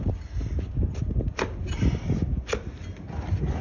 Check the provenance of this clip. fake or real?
real